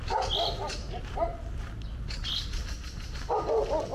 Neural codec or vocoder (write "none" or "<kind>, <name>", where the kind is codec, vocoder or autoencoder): none